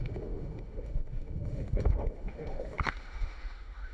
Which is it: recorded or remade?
remade